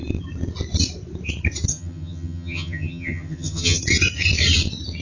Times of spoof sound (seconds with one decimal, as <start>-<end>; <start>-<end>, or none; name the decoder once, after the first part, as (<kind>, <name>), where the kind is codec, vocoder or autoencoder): 1.7-3.8 (vocoder, HiFi-GAN)